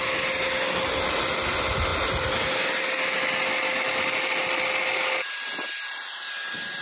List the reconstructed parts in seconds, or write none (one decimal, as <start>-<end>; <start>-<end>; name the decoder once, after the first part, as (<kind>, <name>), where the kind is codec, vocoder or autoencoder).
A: none